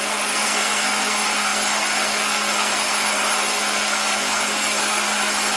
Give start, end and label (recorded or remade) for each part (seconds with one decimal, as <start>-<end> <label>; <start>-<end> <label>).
0.0-5.6 remade

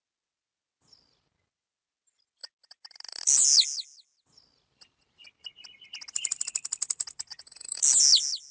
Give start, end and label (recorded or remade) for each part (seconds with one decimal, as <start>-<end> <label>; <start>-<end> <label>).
0.0-7.3 recorded; 7.3-7.8 remade; 7.8-8.5 recorded